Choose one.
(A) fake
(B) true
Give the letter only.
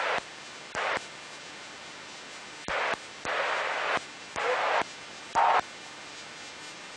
B